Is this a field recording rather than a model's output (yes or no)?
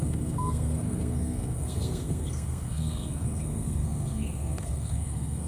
no